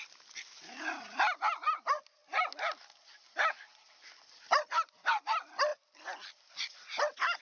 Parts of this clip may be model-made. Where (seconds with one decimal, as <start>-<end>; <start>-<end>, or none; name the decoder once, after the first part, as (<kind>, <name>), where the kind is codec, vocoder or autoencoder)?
none